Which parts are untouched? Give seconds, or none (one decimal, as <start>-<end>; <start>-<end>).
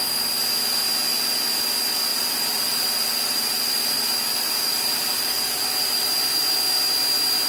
0.0-2.1; 5.6-7.5